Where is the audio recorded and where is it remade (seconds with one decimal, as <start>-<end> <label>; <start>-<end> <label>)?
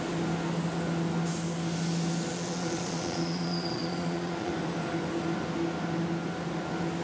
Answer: 0.0-2.3 recorded; 2.3-4.5 remade; 4.5-7.0 recorded